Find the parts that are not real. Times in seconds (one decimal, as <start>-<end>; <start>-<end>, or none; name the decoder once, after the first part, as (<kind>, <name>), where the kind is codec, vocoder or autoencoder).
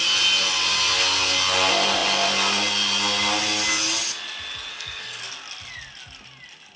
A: 4.7-5.2 (codec, SNAC)